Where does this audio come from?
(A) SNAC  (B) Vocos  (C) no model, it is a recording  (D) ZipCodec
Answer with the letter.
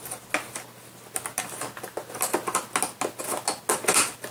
C